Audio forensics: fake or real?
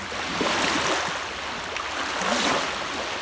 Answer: real